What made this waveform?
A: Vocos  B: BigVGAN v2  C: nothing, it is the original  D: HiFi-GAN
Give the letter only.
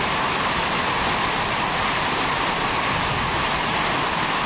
C